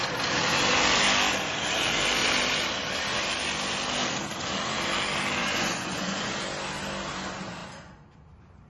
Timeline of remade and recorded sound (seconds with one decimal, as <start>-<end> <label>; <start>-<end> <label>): 0.0-5.4 recorded; 5.4-6.3 remade; 6.3-8.7 recorded